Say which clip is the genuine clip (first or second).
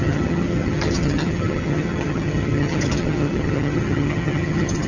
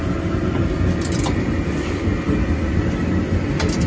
second